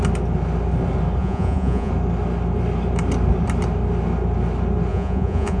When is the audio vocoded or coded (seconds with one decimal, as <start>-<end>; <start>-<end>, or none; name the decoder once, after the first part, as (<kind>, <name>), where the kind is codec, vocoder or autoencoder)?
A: 1.2-1.9 (vocoder, Vocos); 4.9-5.6